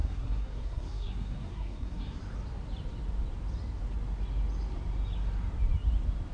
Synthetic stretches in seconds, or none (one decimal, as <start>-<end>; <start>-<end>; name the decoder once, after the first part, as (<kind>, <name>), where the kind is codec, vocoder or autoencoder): 0.0-2.2 (codec, SNAC)

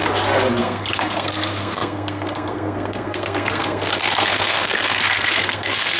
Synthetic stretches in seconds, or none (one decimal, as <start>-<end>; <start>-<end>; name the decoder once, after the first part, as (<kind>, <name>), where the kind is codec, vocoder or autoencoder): 0.6-6.0 (codec, SNAC)